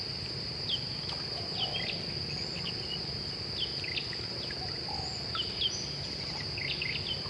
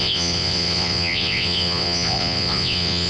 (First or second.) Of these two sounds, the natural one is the first